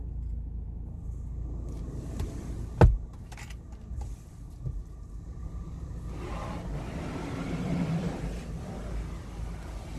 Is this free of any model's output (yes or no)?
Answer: yes